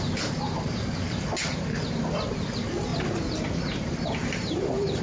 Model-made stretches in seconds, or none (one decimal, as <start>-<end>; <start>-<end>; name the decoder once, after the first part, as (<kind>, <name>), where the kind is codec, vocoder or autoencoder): 4.2-5.0 (vocoder, BigVGAN v2)